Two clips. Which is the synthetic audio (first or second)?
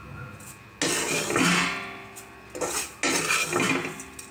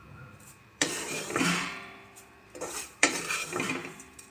second